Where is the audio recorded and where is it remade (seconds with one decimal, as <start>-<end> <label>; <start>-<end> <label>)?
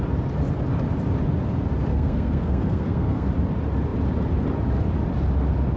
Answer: 0.0-1.9 recorded; 1.9-3.3 remade; 3.3-5.8 recorded